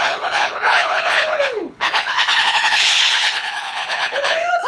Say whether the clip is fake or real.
fake